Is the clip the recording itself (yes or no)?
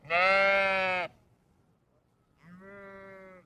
yes